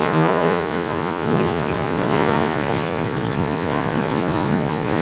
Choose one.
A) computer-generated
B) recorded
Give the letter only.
A